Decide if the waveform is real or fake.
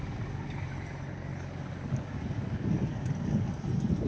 fake